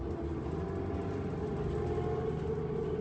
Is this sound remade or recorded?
recorded